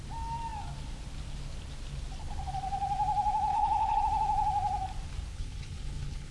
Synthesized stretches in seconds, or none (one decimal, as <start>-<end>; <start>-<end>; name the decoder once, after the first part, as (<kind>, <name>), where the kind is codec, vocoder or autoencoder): 3.5-4.0 (codec, HILCodec); 5.3-6.3